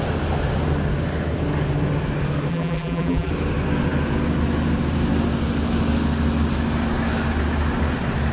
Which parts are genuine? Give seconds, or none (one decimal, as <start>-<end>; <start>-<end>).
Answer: 0.0-2.5; 3.3-8.3